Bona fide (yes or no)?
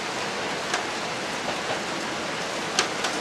yes